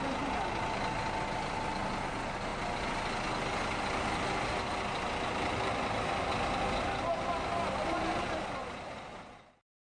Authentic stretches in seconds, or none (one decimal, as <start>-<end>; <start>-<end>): 0.0-9.9